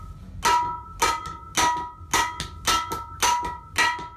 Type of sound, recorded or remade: recorded